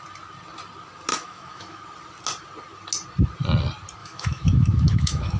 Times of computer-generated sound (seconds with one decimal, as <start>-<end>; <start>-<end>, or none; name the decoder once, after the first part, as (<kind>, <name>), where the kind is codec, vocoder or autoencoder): 1.1-1.8 (autoencoder, DAC-VAE); 4.0-5.4